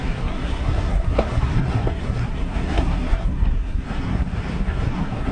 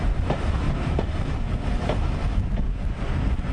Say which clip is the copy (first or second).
first